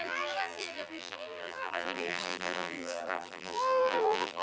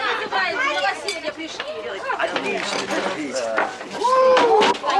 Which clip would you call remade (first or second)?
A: first